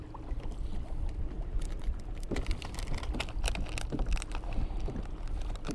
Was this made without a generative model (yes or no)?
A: yes